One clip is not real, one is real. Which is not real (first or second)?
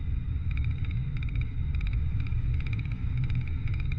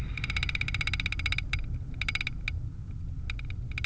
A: first